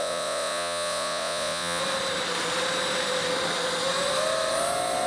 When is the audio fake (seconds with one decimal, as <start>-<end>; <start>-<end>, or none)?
0.0-1.8

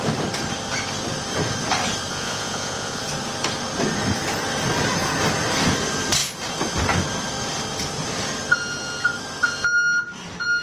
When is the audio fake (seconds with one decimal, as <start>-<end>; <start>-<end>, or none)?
2.1-3.0

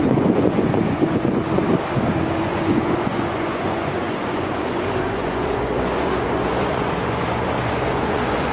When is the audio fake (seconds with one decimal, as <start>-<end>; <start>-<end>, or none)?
0.0-1.7; 2.4-8.5